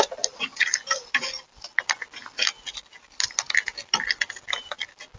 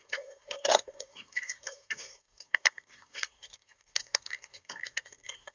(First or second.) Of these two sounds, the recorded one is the first